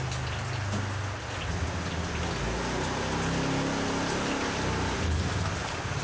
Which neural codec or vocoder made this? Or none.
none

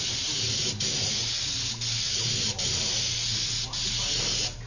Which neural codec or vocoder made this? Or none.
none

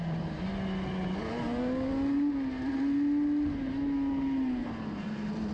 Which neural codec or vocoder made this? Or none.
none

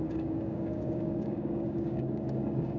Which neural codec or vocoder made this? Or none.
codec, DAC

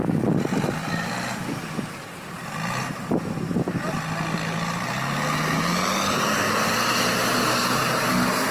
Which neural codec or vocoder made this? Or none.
none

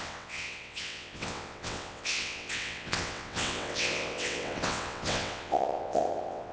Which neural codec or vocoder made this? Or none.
vocoder, WaveNeXt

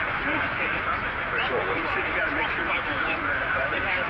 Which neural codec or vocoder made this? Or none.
vocoder, Vocos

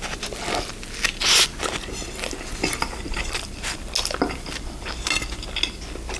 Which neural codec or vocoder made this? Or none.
none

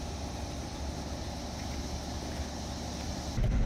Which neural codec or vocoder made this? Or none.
none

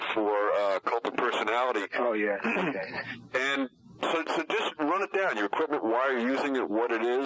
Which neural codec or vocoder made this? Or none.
none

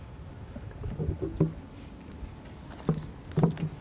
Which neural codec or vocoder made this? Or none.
none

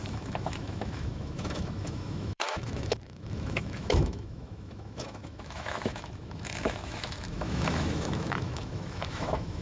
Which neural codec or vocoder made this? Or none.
autoencoder, DAC-VAE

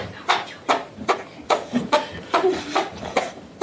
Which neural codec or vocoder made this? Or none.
vocoder, BigVGAN v2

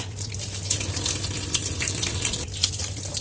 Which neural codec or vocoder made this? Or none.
vocoder, BigVGAN v2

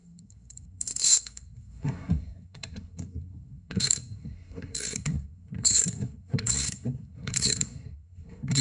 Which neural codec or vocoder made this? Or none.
codec, SNAC